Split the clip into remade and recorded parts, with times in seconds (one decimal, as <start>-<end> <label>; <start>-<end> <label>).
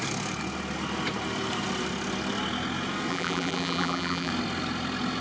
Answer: 0.0-3.1 recorded; 3.1-4.3 remade; 4.3-5.2 recorded